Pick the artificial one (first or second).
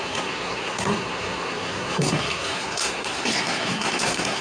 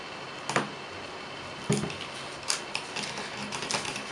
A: first